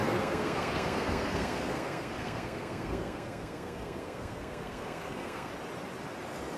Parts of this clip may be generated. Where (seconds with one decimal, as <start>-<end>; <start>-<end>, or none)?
0.0-5.5